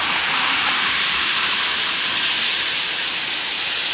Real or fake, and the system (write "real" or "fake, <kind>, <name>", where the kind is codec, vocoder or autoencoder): fake, vocoder, BigVGAN v2